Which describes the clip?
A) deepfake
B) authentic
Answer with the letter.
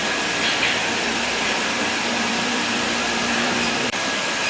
A